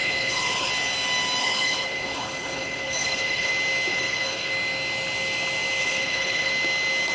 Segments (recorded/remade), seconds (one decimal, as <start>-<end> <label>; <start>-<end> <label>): 0.0-0.7 remade; 0.7-1.4 recorded; 1.4-3.5 remade; 3.5-3.9 recorded; 3.9-4.5 remade; 4.5-5.8 recorded; 5.8-6.5 remade; 6.5-7.1 recorded